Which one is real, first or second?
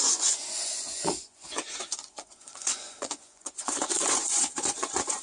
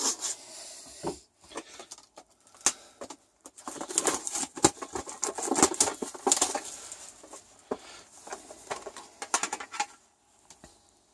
second